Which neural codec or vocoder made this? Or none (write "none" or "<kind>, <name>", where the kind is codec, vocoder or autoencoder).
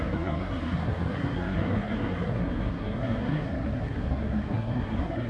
codec, SNAC